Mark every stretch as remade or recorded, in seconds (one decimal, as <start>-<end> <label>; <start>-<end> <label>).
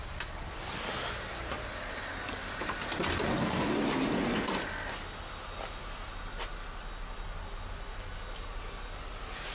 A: 0.0-9.5 recorded